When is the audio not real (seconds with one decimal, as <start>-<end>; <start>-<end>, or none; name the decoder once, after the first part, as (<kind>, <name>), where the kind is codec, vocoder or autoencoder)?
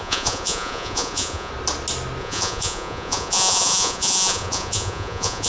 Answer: 0.0-1.5 (vocoder, Vocos); 2.2-5.5